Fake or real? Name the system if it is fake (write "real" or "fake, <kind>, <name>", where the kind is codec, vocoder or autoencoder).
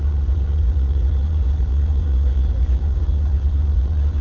fake, vocoder, Vocos